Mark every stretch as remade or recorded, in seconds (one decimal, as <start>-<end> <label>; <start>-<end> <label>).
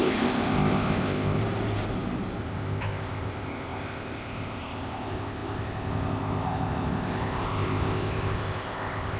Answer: 0.0-1.4 remade; 1.4-2.4 recorded; 2.4-9.2 remade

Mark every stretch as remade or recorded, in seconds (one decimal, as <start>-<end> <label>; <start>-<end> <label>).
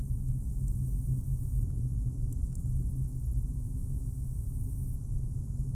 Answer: 0.0-5.7 recorded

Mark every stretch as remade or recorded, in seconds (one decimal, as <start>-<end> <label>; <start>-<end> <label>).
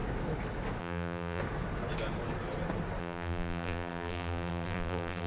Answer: 0.0-0.8 recorded; 0.8-1.4 remade; 1.4-3.0 recorded; 3.0-5.3 remade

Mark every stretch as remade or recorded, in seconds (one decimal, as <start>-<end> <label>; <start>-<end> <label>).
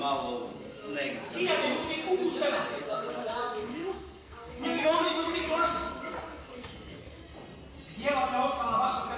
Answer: 0.0-2.7 recorded; 2.7-7.2 remade; 7.2-9.2 recorded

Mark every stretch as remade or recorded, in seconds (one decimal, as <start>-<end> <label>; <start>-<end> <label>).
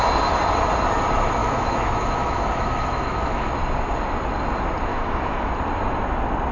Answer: 0.0-1.4 recorded; 1.4-3.5 remade; 3.5-4.9 recorded; 4.9-5.5 remade; 5.5-6.5 recorded